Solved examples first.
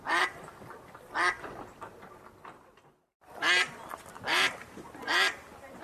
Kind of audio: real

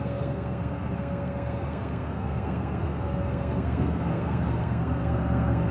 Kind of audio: fake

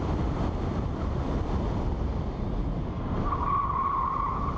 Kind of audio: real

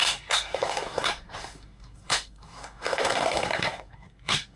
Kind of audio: fake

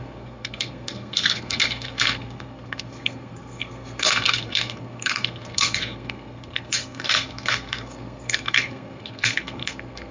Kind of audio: fake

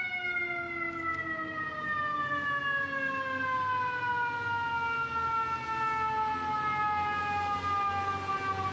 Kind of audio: real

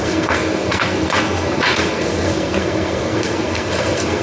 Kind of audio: fake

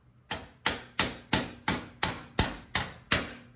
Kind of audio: real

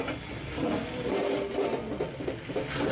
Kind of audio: real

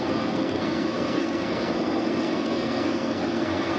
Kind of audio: fake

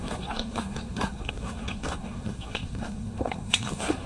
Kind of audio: fake